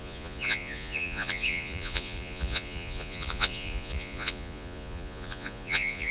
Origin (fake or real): fake